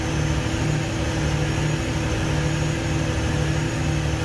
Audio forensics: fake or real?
real